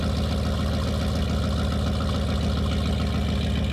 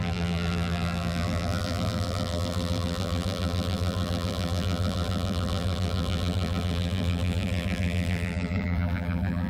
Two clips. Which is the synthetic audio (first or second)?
second